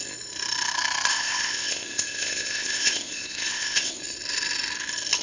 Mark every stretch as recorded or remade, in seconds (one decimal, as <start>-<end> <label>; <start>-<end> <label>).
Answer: 0.0-1.1 recorded; 1.1-4.0 remade; 4.0-5.2 recorded